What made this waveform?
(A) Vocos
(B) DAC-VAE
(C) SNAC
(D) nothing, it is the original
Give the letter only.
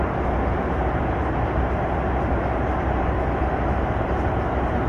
D